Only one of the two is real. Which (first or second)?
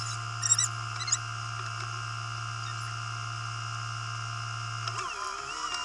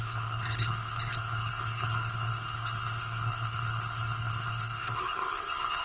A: first